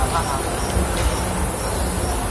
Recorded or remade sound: recorded